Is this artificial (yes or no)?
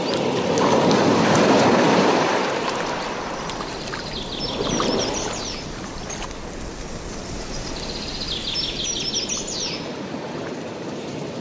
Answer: no